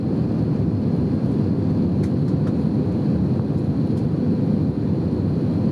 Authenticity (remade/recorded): recorded